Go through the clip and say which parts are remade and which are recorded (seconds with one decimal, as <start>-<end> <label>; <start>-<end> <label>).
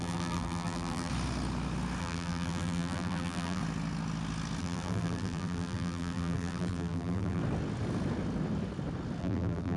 0.0-1.1 remade; 1.1-2.0 recorded; 2.0-3.6 remade; 3.6-4.6 recorded; 4.6-7.4 remade; 7.4-9.2 recorded; 9.2-9.8 remade